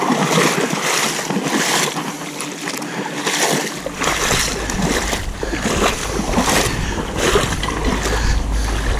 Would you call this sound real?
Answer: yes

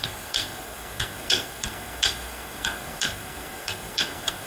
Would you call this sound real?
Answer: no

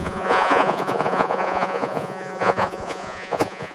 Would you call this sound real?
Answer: no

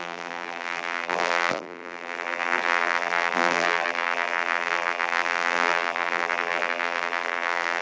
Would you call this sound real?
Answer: no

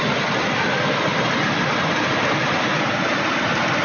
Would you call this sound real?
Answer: yes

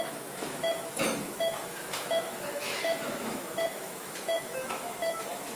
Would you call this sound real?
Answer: no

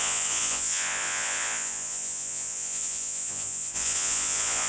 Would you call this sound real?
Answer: no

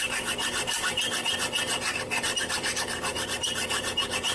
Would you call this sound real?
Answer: no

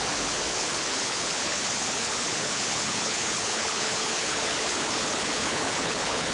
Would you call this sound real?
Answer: no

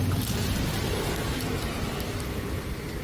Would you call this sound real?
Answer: yes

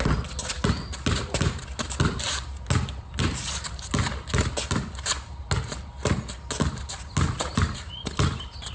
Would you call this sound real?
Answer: yes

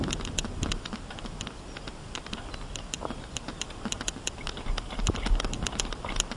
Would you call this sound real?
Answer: yes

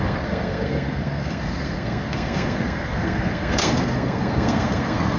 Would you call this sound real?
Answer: no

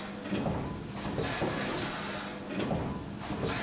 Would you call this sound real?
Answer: yes